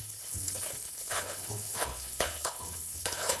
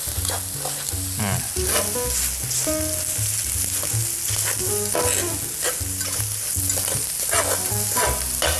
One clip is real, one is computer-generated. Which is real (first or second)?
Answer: second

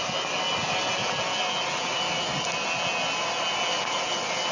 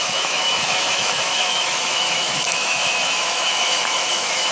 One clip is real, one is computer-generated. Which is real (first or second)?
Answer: first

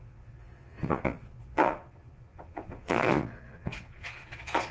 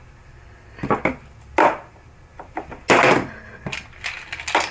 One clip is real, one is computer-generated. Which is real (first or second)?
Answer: second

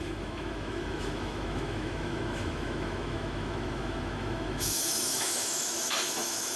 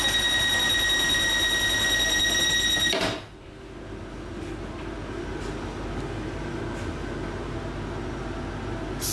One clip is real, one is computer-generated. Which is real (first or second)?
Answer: second